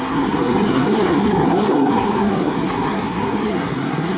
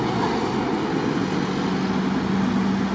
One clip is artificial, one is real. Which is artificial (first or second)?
first